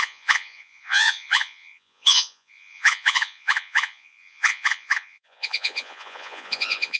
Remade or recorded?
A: remade